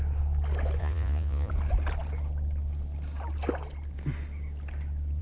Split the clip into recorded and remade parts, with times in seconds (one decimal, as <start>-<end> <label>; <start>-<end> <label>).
0.0-0.8 recorded; 0.8-1.5 remade; 1.5-5.2 recorded